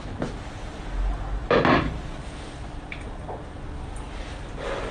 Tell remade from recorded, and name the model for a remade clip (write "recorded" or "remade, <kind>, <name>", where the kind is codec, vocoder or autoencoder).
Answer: recorded